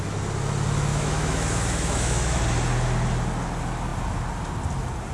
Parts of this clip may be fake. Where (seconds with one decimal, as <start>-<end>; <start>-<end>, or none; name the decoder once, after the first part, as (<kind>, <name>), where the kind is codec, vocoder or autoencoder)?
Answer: 0.9-2.4 (autoencoder, DAC-VAE)